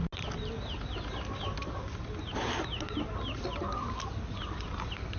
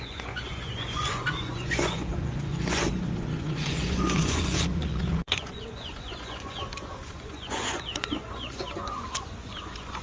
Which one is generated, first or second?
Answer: second